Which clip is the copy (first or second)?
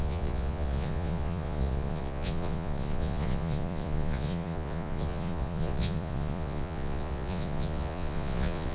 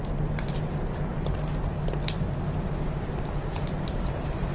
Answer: first